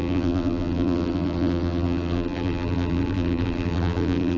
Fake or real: fake